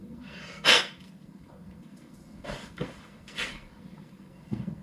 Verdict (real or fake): fake